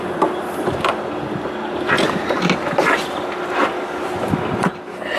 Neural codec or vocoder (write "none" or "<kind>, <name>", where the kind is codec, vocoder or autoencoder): none